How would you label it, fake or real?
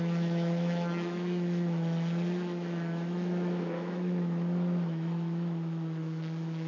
fake